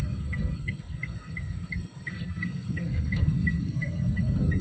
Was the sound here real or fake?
fake